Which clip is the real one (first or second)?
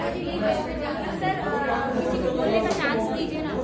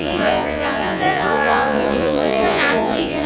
first